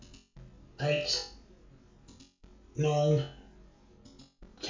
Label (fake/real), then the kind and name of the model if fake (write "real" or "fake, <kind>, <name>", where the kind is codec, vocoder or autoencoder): real